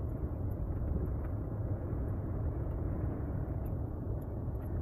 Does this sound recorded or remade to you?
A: remade